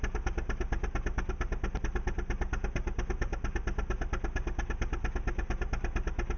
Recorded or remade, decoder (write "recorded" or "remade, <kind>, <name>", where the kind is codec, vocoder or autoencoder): recorded